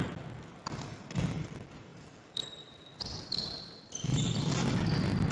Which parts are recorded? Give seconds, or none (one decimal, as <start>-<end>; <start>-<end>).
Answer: 0.0-1.9; 4.4-5.3